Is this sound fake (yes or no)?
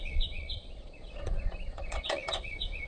yes